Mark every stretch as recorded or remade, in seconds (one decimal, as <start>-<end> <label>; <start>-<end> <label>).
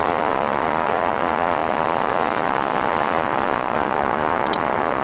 0.0-5.0 remade